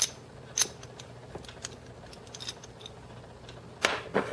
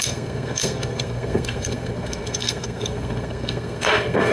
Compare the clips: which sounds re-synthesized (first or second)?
second